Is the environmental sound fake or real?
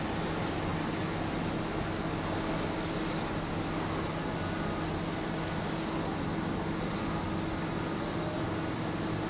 real